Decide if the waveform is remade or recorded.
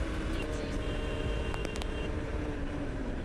remade